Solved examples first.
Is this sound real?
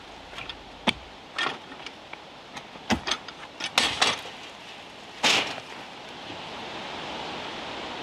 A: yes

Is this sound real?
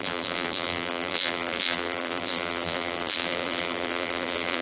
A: no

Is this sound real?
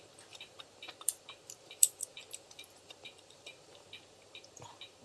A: no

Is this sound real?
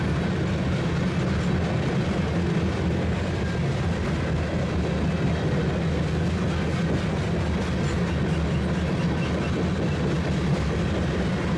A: yes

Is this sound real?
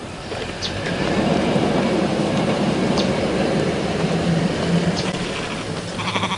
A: no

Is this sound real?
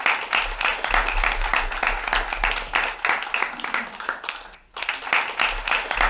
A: yes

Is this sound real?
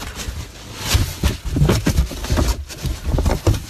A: yes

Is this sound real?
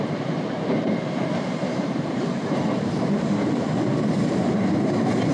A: no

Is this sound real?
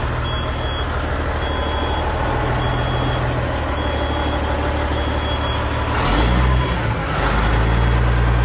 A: yes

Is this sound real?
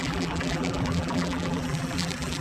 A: no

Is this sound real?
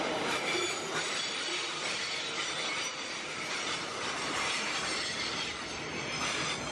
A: no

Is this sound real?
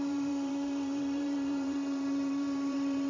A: no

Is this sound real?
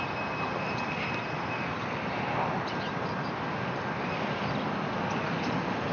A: yes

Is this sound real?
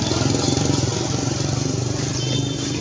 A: no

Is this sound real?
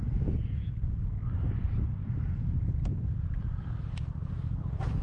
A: no